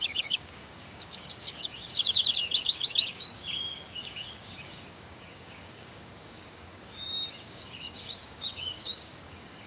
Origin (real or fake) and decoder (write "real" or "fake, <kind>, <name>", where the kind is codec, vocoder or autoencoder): fake, codec, DAC